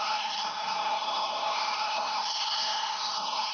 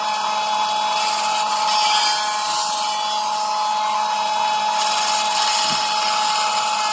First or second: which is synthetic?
first